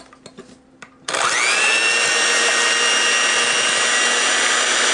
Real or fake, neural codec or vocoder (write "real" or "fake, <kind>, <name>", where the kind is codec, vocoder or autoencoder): real